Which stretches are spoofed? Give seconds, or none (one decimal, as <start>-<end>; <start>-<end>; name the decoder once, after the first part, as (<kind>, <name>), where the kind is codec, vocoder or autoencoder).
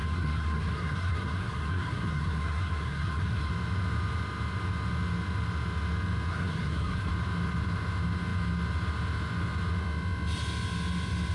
0.0-3.5 (codec, SNAC); 6.3-7.1